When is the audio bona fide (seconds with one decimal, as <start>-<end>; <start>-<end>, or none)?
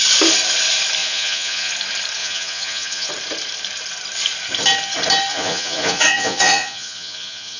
0.0-1.0; 1.7-2.2; 3.1-5.3